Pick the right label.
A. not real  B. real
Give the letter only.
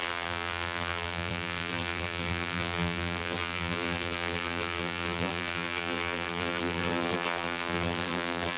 A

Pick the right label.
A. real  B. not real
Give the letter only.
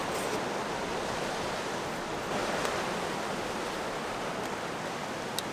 A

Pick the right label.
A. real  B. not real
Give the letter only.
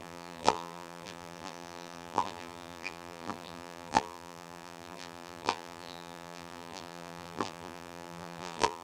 B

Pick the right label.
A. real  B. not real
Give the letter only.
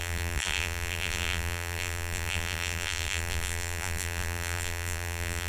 B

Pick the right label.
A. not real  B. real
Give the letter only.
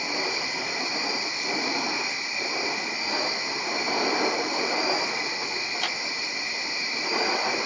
A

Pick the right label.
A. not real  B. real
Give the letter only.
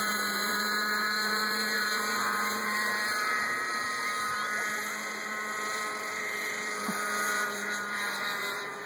A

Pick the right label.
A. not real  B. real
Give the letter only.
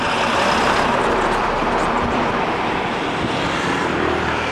A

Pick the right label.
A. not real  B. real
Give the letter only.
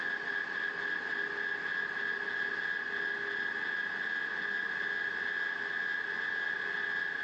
B